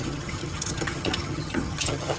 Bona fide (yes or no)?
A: no